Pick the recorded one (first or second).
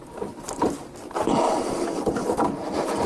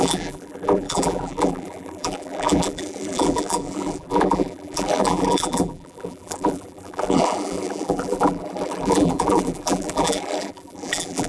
first